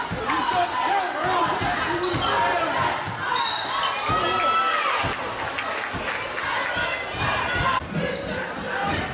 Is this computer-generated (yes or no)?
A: no